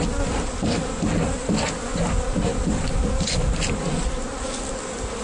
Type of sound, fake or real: real